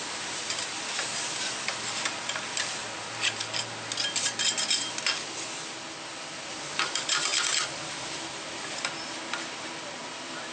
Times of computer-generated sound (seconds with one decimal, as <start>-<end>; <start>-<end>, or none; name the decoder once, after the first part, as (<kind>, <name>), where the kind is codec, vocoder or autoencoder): 0.0-2.8 (vocoder, BigVGAN v2); 6.5-7.3; 8.2-10.5